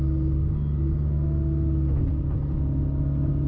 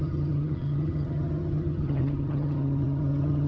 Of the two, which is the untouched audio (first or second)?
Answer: first